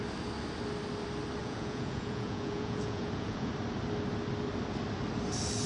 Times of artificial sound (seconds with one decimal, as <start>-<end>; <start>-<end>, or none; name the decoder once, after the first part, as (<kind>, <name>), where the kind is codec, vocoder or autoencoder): 1.4-3.5 (vocoder, Vocos)